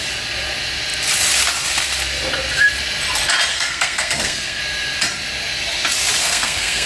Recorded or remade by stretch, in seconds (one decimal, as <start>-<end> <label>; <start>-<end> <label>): 0.0-3.5 recorded; 3.5-4.6 remade; 4.6-6.2 recorded; 6.2-6.9 remade